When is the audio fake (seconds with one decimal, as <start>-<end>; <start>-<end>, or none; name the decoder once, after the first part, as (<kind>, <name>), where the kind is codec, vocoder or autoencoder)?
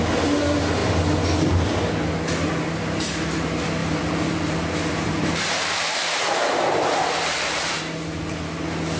3.8-7.8 (vocoder, BigVGAN v2)